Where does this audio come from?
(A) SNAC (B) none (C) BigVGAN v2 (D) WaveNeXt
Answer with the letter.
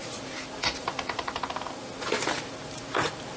C